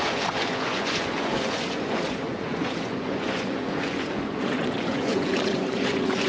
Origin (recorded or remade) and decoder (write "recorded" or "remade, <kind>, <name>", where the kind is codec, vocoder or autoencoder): remade, vocoder, Vocos